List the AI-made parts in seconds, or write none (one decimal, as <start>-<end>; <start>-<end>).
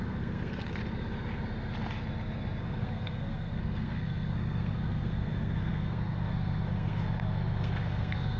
0.0-0.8; 2.6-8.4